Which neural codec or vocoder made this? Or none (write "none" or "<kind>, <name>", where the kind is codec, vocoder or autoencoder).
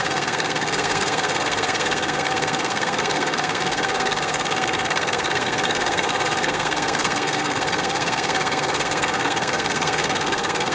codec, SNAC